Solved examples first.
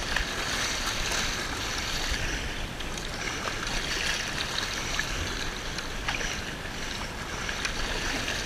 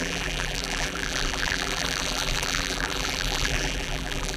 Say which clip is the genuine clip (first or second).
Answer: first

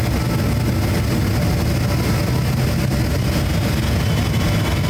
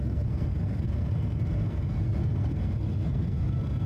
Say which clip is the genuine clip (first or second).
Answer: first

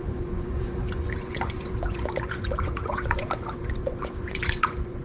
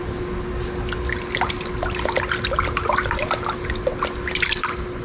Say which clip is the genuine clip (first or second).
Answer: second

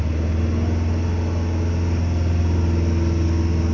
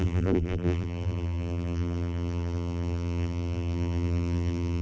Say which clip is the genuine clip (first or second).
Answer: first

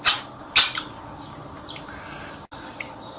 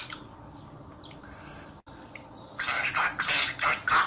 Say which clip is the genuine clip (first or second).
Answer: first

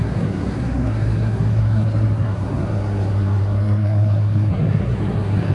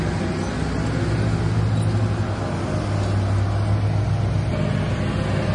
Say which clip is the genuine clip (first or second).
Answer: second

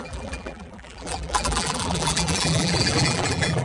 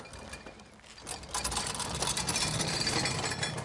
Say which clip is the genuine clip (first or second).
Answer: second